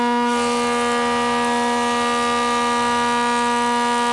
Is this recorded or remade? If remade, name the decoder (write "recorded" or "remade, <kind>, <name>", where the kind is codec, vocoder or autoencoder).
recorded